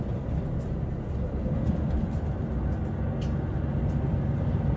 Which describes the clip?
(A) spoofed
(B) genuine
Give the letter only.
B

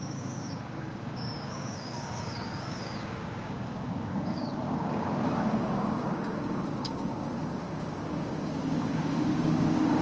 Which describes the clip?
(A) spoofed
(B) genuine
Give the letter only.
A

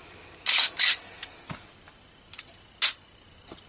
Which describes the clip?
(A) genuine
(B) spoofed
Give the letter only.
A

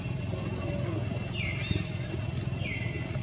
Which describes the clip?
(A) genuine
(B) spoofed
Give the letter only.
A